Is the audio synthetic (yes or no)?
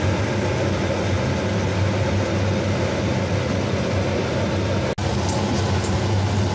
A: no